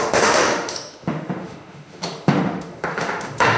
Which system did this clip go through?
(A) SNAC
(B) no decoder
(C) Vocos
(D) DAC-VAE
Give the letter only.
D